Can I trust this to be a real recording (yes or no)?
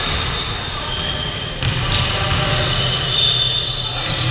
yes